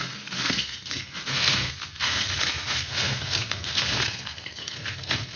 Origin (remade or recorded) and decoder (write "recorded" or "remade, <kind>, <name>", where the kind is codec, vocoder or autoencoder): remade, codec, SNAC